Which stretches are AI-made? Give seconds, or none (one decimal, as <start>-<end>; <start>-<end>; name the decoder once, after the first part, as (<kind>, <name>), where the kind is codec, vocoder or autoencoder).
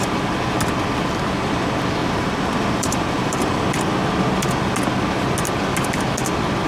2.0-3.5 (vocoder, BigVGAN v2)